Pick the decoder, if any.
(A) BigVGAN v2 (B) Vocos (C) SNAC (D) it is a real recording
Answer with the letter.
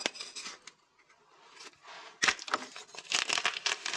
D